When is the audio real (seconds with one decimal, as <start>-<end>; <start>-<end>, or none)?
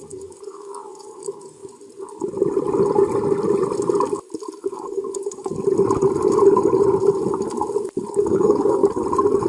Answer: 1.6-4.6; 5.5-8.1; 8.8-9.5